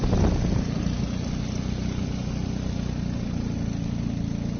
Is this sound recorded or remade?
recorded